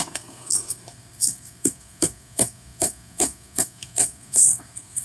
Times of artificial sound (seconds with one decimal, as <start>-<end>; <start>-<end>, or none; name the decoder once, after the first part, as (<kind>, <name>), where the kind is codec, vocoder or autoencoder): 0.0-5.0 (codec, SNAC)